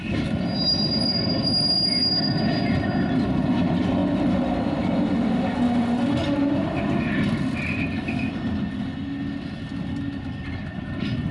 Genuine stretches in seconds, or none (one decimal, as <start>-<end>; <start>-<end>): 0.0-11.3